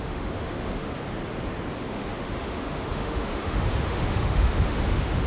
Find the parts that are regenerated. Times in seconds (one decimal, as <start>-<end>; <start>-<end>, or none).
0.0-0.9; 1.8-5.3